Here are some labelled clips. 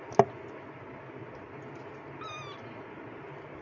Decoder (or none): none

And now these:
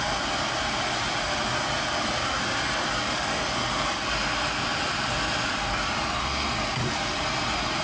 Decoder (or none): none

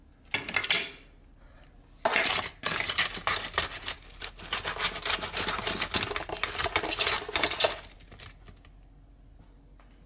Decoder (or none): none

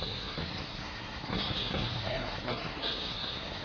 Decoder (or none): codec, SNAC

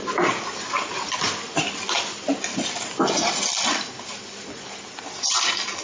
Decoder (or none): none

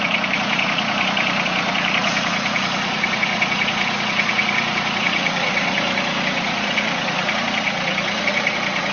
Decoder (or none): vocoder, Vocos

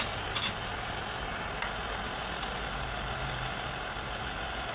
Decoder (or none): none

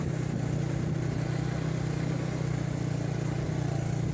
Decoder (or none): none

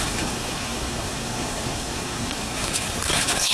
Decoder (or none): codec, SNAC